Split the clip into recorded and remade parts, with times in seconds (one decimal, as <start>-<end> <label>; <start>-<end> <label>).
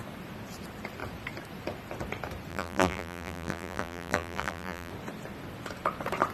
0.0-2.5 recorded; 2.5-4.9 remade; 4.9-6.3 recorded